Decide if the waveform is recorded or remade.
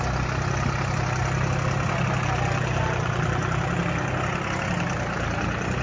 recorded